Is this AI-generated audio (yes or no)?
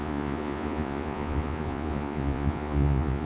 yes